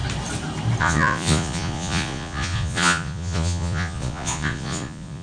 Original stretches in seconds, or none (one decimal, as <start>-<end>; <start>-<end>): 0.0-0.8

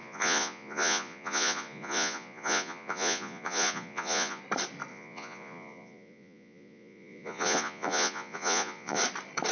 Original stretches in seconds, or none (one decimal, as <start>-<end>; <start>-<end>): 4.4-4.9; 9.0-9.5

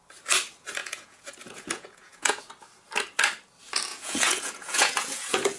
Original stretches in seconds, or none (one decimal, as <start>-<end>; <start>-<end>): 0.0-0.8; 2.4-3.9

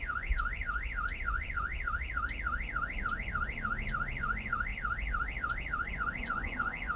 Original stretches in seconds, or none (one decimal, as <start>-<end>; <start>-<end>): 1.7-4.2; 4.7-5.9